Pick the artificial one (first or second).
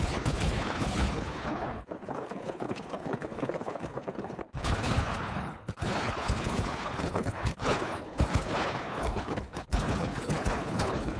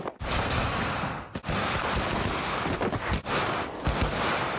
first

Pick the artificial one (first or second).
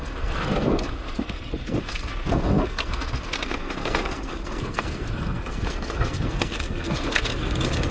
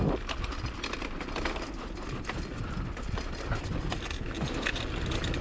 first